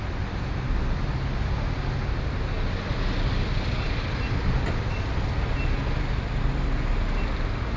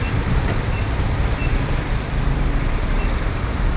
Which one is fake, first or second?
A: second